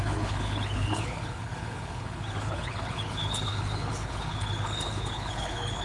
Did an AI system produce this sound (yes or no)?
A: yes